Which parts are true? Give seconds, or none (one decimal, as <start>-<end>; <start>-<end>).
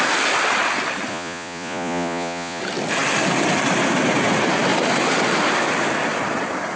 0.0-1.1; 2.6-6.8